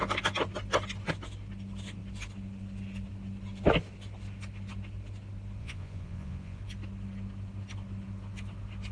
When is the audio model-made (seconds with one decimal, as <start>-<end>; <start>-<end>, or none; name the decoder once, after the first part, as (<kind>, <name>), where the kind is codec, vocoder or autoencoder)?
5.6-6.6 (vocoder, Vocos)

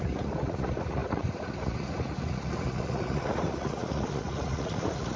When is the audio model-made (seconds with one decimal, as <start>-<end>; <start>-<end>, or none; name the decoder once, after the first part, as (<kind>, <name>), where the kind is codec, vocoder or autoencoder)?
0.0-5.2 (vocoder, Vocos)

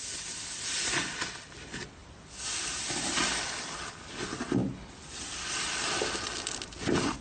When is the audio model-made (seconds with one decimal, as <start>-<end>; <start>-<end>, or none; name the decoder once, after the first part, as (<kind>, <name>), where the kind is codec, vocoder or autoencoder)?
none

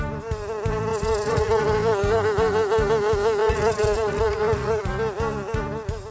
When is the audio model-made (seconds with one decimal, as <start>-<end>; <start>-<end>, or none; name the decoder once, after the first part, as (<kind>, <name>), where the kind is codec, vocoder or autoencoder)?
0.9-1.6 (vocoder, Vocos); 3.4-4.8

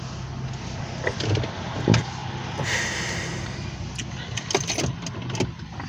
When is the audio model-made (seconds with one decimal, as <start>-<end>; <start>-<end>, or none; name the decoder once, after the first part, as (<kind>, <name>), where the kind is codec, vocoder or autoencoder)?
none

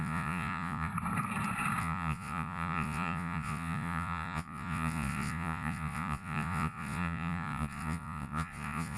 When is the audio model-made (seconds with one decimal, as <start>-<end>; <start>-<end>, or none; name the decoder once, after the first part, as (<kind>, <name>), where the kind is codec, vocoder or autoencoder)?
0.0-0.9 (vocoder, Vocos); 1.8-9.0